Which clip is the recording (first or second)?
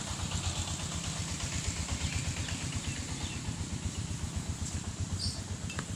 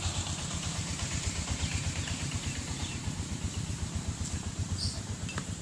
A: first